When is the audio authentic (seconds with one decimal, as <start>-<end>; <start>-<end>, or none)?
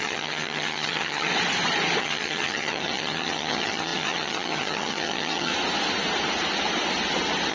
1.3-2.0; 5.5-7.5